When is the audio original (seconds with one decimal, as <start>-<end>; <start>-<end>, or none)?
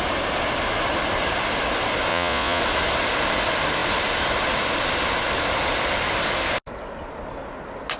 0.0-2.1; 2.6-8.0